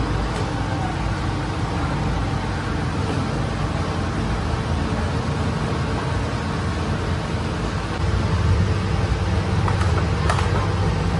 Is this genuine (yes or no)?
yes